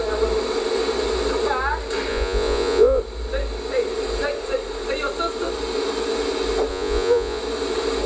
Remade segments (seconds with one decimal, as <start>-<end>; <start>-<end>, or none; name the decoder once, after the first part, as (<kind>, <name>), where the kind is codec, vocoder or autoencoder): 2.1-3.0 (vocoder, Vocos); 6.7-7.4